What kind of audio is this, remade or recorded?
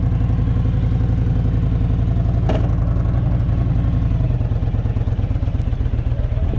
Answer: recorded